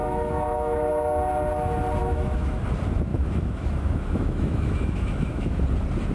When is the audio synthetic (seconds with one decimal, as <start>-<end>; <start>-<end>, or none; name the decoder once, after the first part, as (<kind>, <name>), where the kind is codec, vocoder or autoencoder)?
0.0-0.9 (autoencoder, DAC-VAE); 2.0-2.6; 3.1-5.6